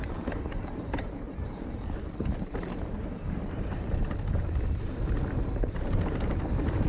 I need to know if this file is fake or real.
fake